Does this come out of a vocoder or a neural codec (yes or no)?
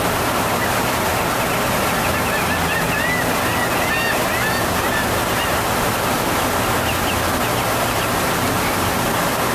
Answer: no